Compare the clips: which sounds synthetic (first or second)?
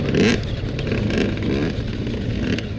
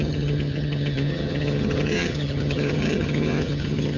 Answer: second